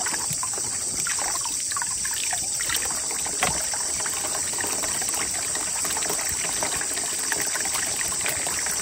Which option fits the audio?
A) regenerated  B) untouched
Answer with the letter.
B